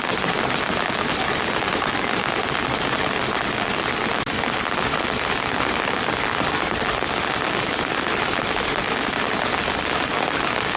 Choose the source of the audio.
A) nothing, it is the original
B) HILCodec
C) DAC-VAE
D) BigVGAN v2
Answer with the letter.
A